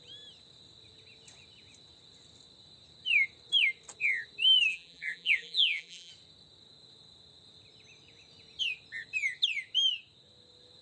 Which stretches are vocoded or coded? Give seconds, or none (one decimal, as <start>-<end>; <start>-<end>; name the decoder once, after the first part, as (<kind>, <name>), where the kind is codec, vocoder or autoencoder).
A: 4.7-6.1 (vocoder, BigVGAN v2)